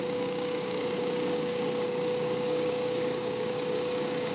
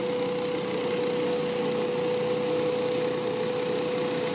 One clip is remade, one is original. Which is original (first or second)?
second